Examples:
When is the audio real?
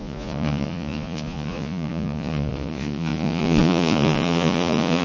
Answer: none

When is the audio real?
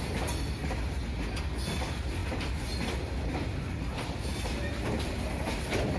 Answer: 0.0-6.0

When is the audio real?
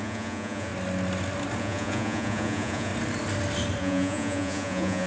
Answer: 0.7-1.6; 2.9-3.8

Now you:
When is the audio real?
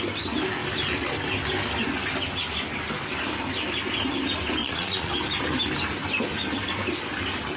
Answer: 0.0-4.6; 5.1-7.6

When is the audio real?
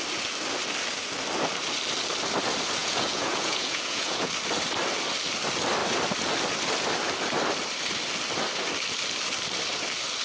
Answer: 0.0-2.8; 4.3-10.2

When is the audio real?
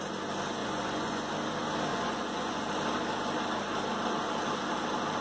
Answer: 0.0-0.6; 1.3-1.9; 2.6-5.2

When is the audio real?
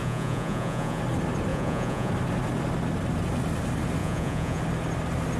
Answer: 1.0-1.5; 2.1-4.0; 4.6-5.4